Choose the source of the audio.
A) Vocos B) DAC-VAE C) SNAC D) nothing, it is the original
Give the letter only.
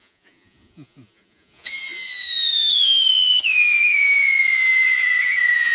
A